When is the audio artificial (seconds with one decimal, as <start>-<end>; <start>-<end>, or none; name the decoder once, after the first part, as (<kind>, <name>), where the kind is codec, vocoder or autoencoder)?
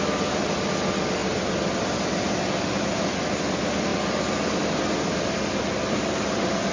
none